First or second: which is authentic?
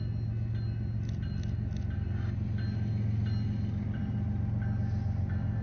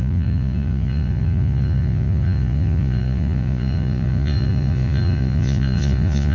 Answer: first